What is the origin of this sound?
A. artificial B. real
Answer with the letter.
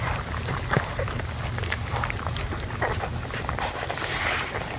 B